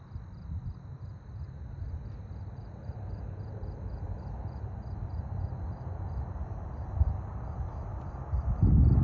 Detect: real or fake real